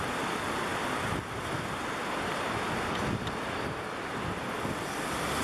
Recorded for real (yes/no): yes